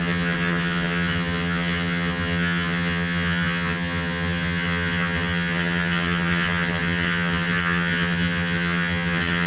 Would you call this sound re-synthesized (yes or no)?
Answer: yes